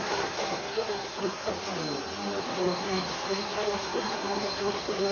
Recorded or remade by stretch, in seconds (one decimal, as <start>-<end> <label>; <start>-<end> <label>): 0.0-1.5 remade; 1.5-2.4 recorded; 2.4-5.1 remade